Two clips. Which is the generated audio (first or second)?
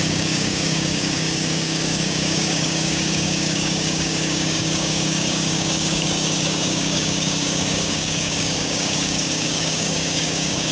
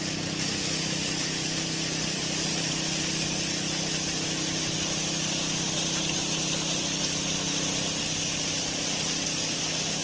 first